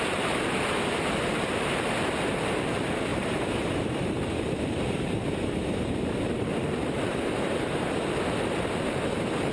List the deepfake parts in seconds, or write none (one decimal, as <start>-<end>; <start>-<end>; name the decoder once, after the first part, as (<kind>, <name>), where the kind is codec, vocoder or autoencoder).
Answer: 3.1-7.9 (vocoder, BigVGAN v2)